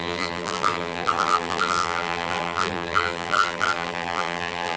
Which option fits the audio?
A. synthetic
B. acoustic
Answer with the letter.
A